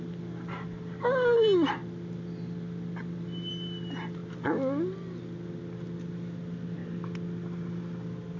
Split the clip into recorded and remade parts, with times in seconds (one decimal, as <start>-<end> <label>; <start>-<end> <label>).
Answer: 0.0-8.4 recorded